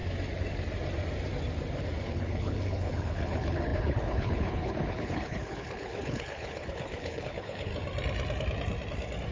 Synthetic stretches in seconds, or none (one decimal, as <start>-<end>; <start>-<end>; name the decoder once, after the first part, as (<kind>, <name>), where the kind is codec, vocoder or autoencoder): 2.0-7.7 (codec, HILCodec)